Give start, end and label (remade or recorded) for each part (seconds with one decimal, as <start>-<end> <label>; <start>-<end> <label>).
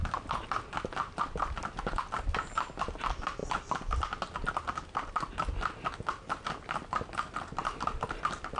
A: 0.0-8.6 recorded